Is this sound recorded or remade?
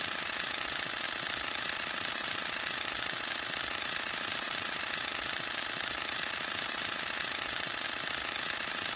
remade